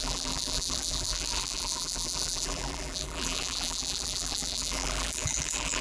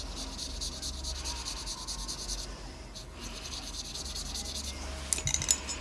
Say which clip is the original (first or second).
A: second